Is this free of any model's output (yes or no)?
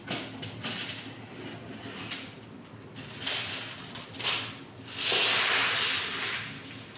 yes